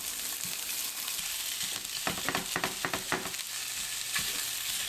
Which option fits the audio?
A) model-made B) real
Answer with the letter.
B